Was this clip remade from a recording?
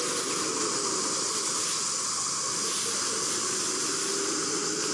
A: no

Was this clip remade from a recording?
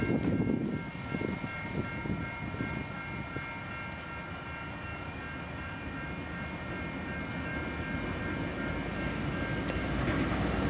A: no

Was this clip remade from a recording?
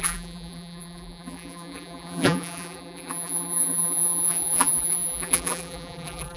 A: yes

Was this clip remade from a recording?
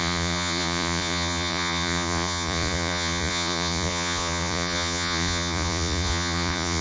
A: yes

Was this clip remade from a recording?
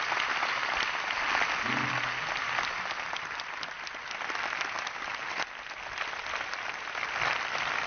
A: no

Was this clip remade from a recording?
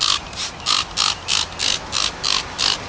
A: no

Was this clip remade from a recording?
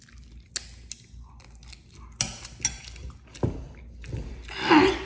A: no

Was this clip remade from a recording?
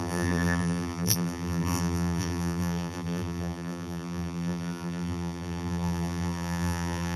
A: yes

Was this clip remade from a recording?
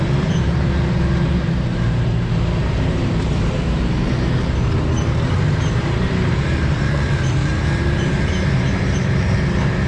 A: yes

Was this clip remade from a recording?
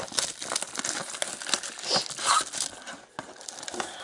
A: no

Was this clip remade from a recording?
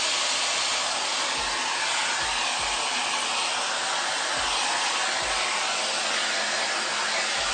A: no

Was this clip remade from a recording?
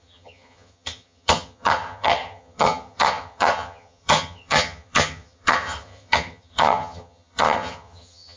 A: yes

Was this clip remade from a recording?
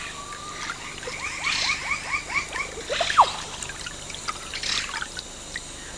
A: no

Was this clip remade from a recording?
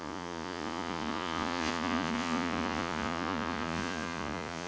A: yes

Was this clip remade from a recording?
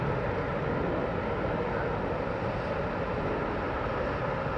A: no